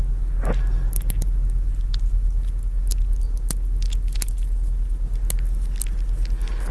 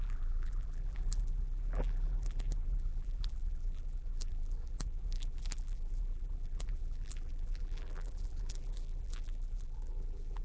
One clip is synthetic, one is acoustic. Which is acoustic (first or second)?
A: first